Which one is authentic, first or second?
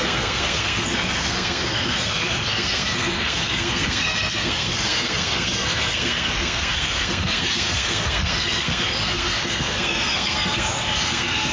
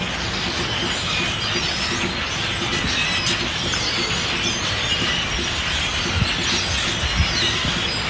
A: second